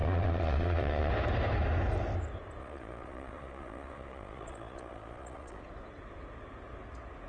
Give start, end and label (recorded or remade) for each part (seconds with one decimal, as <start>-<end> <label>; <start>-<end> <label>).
0.0-1.1 remade; 1.1-2.6 recorded; 2.6-5.6 remade; 5.6-7.3 recorded